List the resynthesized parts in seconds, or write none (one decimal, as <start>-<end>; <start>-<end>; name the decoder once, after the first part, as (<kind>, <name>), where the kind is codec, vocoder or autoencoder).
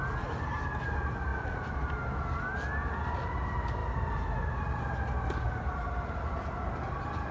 none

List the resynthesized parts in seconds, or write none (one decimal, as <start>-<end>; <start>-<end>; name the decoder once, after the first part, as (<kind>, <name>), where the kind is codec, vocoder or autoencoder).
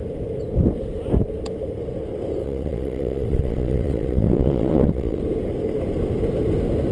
2.4-5.2 (vocoder, WaveNeXt)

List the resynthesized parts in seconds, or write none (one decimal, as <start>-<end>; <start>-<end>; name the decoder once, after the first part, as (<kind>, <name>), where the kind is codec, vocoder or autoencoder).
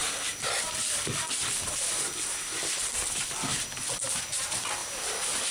3.0-3.5 (vocoder, BigVGAN v2); 4.1-4.8